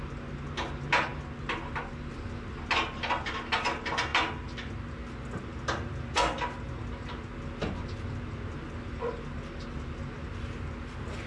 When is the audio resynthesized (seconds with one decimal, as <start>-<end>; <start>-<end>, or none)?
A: none